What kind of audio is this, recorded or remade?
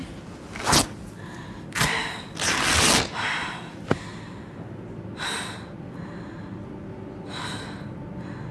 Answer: recorded